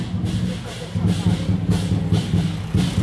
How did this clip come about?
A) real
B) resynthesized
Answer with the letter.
A